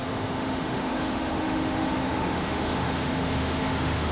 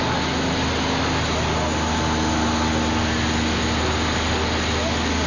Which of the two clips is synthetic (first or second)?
first